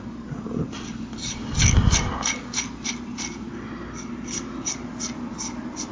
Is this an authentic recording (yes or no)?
yes